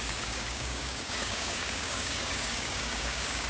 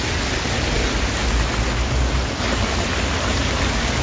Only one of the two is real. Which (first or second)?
second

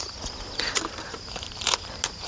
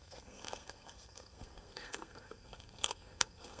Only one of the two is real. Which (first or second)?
first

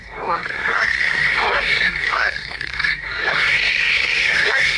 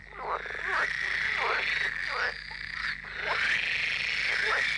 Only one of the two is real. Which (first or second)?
second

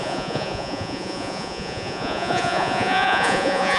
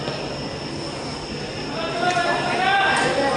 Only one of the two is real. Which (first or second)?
second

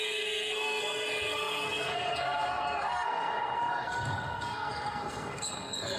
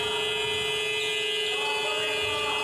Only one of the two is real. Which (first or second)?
second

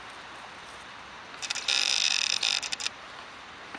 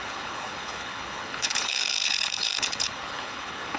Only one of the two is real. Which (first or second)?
first